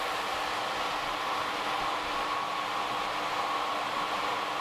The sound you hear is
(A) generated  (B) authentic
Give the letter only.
B